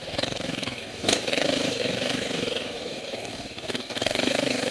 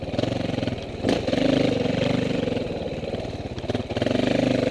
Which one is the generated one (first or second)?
first